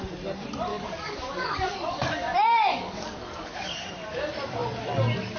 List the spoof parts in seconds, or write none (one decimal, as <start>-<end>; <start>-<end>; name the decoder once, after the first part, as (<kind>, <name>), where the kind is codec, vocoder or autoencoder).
0.7-3.9 (codec, DAC)